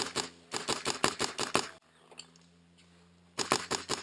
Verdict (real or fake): real